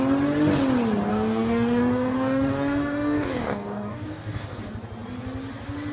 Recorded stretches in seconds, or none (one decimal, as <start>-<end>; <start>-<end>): 0.0-1.1; 4.6-5.9